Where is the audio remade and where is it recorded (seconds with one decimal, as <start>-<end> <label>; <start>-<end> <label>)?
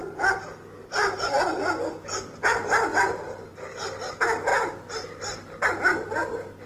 0.0-6.7 recorded